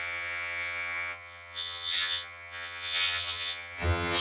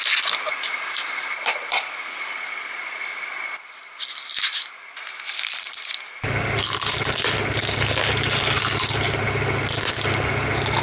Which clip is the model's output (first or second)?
first